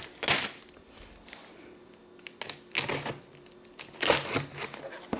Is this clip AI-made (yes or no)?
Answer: no